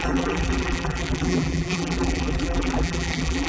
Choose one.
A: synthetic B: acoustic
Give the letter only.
A